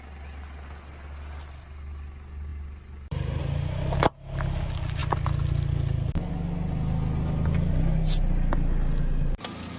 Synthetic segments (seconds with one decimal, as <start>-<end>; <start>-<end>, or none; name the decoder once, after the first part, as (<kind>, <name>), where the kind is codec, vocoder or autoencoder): none